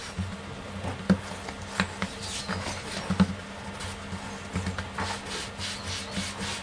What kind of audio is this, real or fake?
real